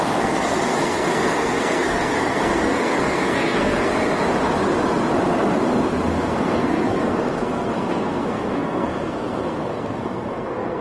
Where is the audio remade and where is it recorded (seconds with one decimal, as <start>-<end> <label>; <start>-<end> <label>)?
0.0-3.9 remade; 3.9-6.1 recorded; 6.1-10.8 remade